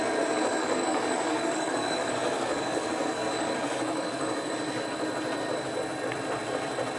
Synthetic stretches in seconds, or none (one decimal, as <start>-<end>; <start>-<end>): 0.6-4.5